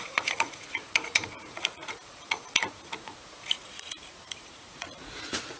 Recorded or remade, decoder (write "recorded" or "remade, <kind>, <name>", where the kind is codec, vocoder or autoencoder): remade, vocoder, Vocos